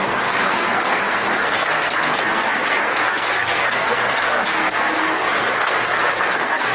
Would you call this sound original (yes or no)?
no